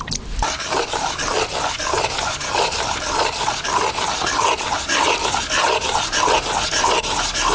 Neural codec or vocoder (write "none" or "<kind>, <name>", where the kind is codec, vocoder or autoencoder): none